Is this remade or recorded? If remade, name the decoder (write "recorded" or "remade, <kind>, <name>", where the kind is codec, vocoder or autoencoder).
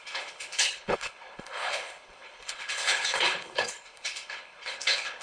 remade, codec, HILCodec